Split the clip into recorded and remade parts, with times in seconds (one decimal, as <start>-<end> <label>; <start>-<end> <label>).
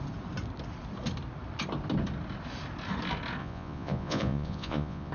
0.0-3.4 recorded; 3.4-5.1 remade